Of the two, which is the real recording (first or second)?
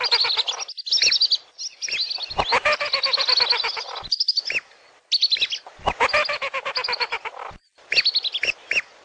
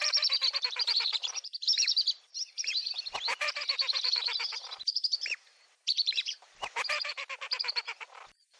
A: first